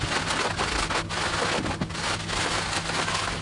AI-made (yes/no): no